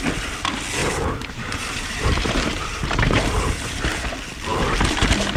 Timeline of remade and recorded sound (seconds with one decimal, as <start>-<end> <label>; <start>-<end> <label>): 0.0-0.8 recorded; 0.8-4.0 remade; 4.0-5.4 recorded

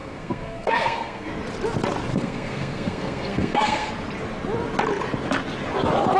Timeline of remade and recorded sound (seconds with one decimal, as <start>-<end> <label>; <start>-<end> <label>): 0.0-1.3 remade; 1.3-2.1 recorded; 2.1-3.9 remade; 3.9-6.2 recorded

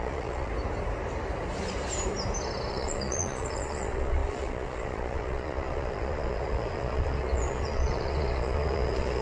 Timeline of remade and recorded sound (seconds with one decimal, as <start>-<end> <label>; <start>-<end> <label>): 0.0-0.5 remade; 0.5-2.7 recorded; 2.7-9.2 remade

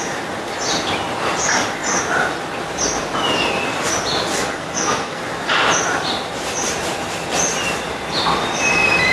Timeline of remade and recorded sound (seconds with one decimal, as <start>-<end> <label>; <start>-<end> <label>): 0.0-4.3 recorded; 4.3-5.2 remade; 5.2-9.1 recorded